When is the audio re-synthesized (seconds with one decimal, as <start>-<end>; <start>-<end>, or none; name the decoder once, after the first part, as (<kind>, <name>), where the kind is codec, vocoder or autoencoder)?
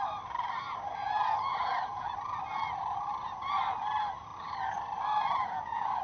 5.4-6.0 (vocoder, Vocos)